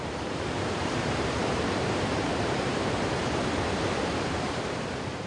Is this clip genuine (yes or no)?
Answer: no